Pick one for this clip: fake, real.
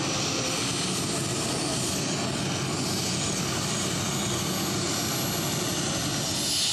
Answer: real